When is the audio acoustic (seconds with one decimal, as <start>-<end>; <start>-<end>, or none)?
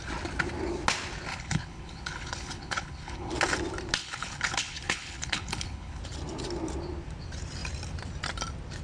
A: 0.0-1.3; 3.3-4.0; 6.0-8.8